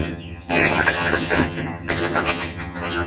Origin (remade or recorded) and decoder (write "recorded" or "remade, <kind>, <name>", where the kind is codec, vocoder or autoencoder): remade, vocoder, HiFi-GAN